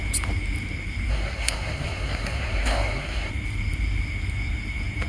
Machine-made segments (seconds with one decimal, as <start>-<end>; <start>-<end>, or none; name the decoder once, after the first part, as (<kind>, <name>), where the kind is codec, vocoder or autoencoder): 1.1-3.3 (codec, SNAC)